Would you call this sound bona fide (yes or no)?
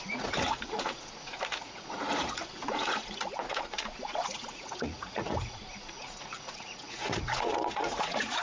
no